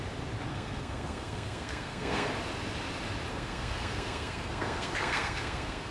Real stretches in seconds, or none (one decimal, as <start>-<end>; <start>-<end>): 0.0-0.5; 2.3-3.3